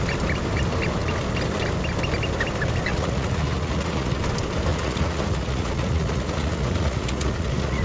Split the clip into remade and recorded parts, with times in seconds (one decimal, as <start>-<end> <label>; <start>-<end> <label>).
0.0-2.9 recorded; 2.9-4.2 remade; 4.2-4.7 recorded; 4.7-7.8 remade